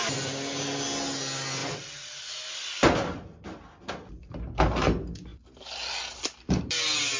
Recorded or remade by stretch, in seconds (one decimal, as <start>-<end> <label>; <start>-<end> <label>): 0.0-7.2 recorded